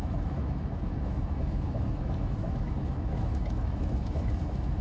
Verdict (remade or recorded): remade